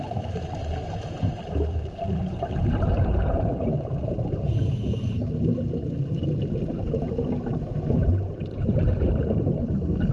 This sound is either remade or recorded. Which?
remade